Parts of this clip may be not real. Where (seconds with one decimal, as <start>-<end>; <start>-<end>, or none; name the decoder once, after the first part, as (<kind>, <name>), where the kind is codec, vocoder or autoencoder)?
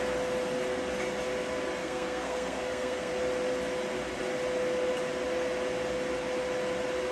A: 1.8-3.1 (codec, SNAC)